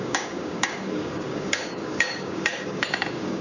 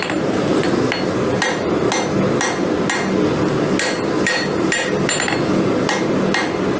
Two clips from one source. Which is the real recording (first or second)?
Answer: second